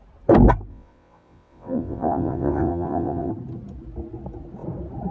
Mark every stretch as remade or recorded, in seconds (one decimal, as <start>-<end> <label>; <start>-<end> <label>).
0.0-0.7 recorded; 0.7-3.3 remade; 3.3-5.1 recorded